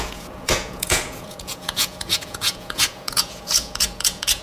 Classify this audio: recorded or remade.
remade